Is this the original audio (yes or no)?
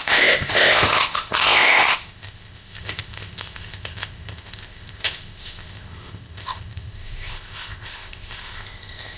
no